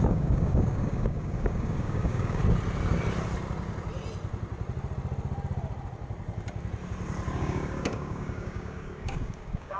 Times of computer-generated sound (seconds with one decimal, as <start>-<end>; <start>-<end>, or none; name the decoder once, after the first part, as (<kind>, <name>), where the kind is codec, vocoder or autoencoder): 0.0-2.4 (codec, DAC); 7.4-9.8